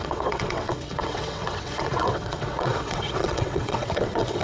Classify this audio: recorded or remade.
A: remade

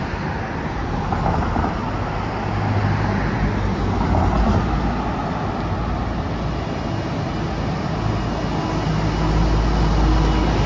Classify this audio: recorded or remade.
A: recorded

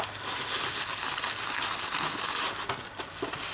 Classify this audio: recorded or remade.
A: recorded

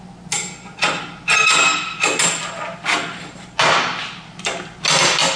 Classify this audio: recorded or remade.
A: recorded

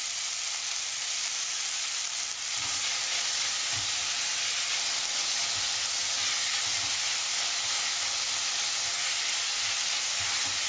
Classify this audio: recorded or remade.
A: recorded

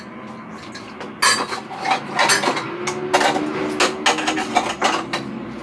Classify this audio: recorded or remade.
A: recorded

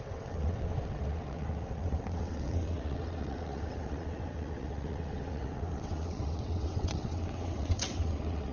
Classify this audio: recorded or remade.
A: remade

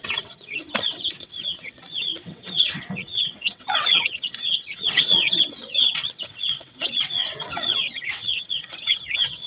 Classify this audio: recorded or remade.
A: remade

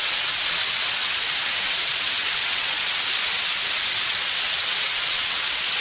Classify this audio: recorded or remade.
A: remade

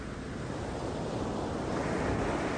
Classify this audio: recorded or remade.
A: recorded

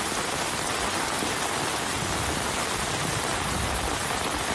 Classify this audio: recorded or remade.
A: recorded